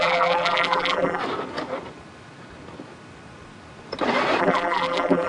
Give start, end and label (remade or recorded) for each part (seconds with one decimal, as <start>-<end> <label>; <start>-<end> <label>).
0.0-1.2 remade; 1.2-4.4 recorded; 4.4-5.3 remade